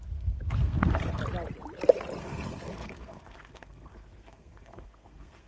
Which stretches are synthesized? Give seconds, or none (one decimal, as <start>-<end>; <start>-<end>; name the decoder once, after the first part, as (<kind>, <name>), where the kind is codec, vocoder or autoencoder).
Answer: 0.0-1.2 (codec, SNAC); 2.2-5.5